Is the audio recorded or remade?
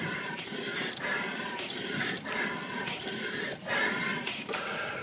remade